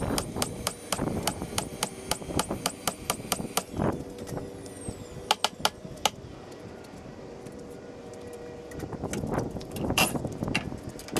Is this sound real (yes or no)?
yes